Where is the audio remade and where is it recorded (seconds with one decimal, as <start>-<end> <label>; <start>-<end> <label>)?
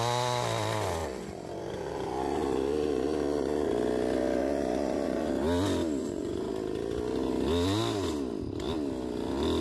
0.0-1.0 recorded; 1.0-3.7 remade; 3.7-4.4 recorded; 4.4-5.3 remade; 5.3-6.0 recorded; 6.0-6.5 remade; 6.5-9.6 recorded